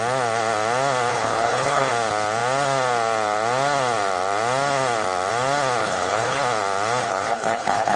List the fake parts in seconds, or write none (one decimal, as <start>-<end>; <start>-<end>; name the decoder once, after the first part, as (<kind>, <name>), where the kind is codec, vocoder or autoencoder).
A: 1.1-1.9 (codec, HILCodec); 5.8-6.4; 7.0-8.0